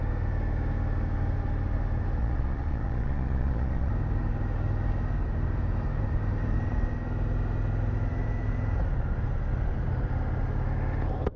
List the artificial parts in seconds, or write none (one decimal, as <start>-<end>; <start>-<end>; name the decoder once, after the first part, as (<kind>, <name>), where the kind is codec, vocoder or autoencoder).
2.2-3.9 (vocoder, Vocos)